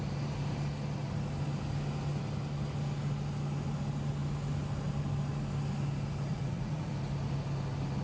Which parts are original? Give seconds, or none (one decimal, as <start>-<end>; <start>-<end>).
0.0-6.3; 6.9-8.0